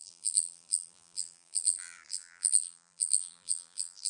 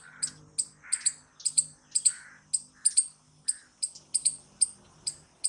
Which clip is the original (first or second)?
second